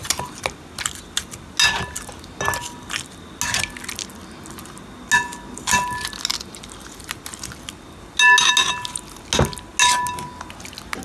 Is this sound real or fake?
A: real